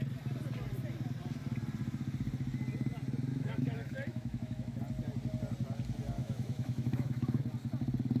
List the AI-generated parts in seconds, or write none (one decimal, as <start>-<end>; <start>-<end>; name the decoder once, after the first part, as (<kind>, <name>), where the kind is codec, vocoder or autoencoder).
3.3-4.8 (autoencoder, DAC-VAE); 6.2-7.4

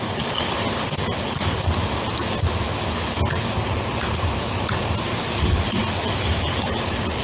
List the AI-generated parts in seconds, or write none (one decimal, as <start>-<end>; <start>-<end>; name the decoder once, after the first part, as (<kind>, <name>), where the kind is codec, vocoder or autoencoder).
0.0-0.5 (codec, DAC)

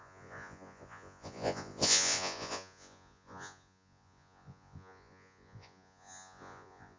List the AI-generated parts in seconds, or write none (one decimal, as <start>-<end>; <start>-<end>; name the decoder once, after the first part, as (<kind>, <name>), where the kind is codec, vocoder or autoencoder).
0.0-7.0 (vocoder, Vocos)

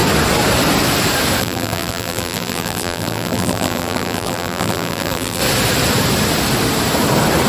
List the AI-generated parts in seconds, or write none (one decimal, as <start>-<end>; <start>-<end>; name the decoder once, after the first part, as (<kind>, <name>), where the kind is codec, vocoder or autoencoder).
1.4-5.4 (vocoder, BigVGAN v2)

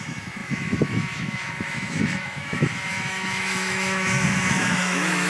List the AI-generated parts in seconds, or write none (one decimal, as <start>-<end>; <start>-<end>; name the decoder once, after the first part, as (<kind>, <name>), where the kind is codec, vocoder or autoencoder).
0.0-5.3 (autoencoder, DAC-VAE)

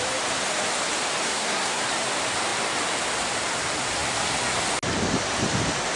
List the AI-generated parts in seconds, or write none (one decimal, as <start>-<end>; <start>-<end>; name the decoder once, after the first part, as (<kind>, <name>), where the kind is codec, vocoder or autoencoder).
1.2-1.8 (codec, SNAC)

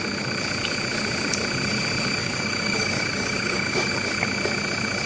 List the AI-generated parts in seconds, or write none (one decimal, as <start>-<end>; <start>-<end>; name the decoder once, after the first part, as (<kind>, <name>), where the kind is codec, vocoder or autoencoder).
2.2-3.9 (codec, DAC)

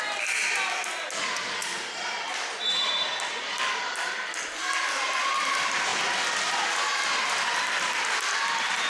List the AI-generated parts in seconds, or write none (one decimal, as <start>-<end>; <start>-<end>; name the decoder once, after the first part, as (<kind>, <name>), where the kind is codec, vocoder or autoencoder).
none